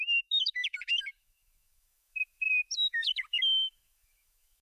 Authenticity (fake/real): fake